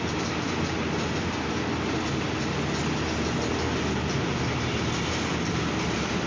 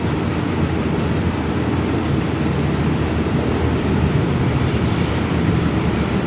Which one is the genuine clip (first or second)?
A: first